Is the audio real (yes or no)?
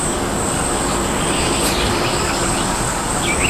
no